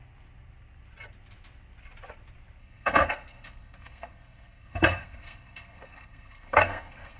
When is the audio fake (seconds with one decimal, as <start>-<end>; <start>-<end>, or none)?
2.6-7.2